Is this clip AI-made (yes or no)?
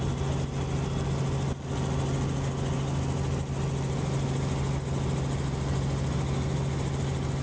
no